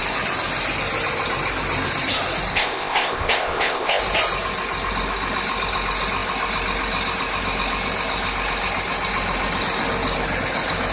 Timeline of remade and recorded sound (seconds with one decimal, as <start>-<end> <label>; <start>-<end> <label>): 0.0-2.5 recorded; 2.5-4.0 remade; 4.0-10.9 recorded